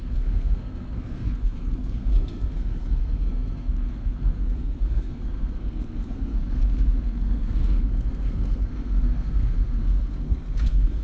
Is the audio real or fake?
fake